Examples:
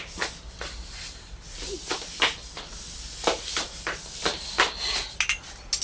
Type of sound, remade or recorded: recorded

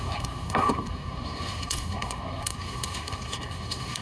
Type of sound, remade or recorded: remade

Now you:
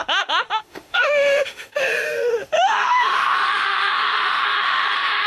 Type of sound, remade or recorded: remade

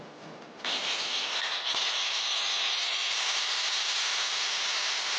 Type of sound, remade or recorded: recorded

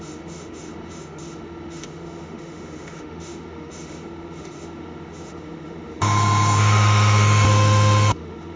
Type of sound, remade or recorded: remade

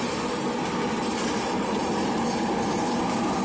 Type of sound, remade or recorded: recorded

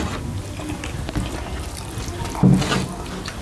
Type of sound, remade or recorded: recorded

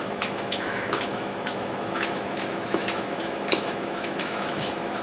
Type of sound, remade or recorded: remade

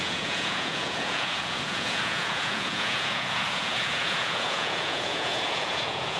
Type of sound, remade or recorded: remade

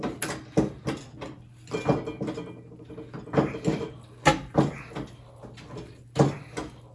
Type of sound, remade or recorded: recorded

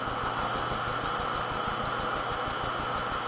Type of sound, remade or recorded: recorded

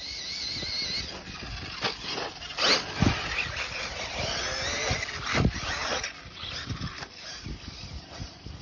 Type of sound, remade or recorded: recorded